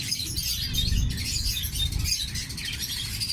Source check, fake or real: real